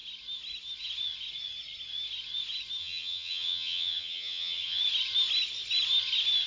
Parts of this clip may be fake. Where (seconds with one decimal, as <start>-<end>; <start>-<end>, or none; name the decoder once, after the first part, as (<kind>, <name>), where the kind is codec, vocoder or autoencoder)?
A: 2.8-4.8 (vocoder, HiFi-GAN)